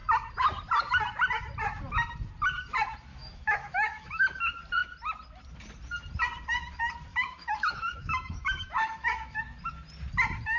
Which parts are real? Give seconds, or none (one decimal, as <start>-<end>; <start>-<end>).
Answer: 0.0-3.1; 4.2-7.1; 9.4-10.6